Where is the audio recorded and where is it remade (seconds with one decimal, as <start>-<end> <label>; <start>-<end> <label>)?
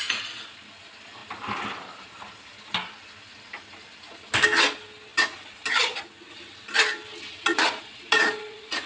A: 0.0-7.5 recorded; 7.5-8.9 remade